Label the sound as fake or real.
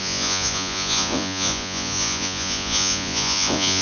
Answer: fake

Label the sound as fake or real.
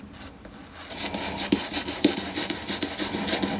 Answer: real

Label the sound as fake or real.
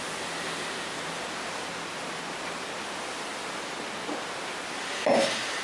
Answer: real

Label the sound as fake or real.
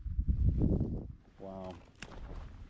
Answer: real